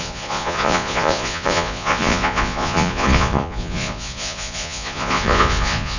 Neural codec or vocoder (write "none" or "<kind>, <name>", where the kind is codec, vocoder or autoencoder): vocoder, Vocos